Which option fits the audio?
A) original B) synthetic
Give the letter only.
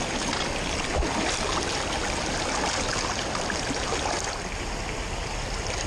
A